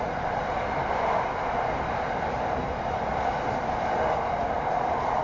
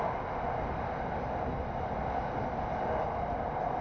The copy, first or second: first